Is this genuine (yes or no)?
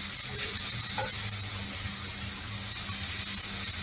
yes